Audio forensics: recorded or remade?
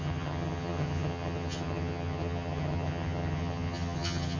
remade